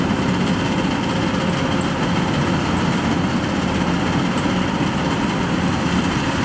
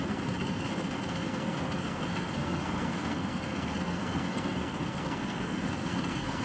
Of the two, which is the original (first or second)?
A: first